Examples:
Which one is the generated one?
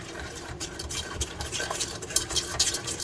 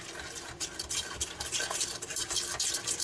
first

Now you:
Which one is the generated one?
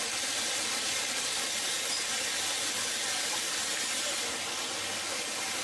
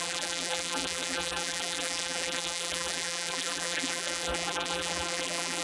second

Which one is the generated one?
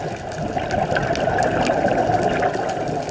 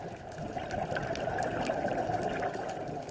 second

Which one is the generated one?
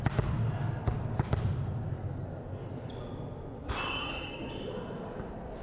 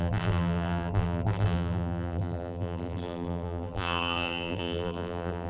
second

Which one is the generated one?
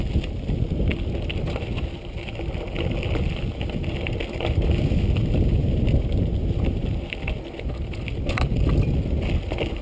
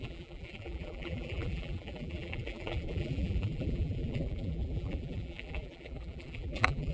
second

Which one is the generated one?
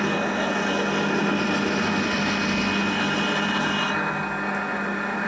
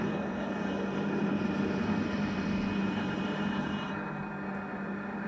second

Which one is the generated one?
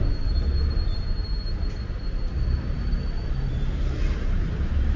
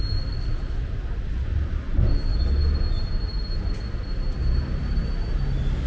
first